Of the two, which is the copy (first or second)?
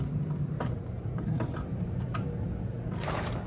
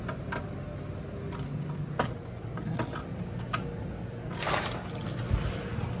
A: first